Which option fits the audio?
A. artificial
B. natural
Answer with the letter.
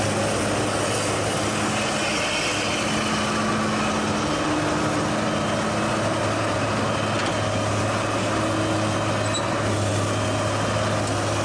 B